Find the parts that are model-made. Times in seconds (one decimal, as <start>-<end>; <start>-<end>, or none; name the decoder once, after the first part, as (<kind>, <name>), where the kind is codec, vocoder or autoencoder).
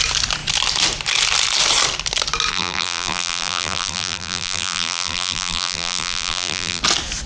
2.5-6.8 (vocoder, BigVGAN v2)